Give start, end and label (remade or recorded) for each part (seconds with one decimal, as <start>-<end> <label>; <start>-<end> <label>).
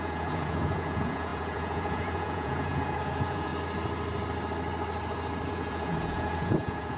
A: 0.0-3.5 remade; 3.5-5.5 recorded; 5.5-7.0 remade